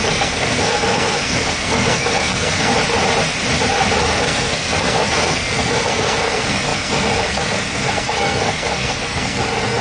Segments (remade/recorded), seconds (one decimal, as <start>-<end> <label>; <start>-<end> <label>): 0.0-2.7 remade; 2.7-4.0 recorded; 4.0-9.8 remade